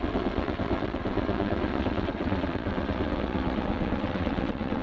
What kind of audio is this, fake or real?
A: fake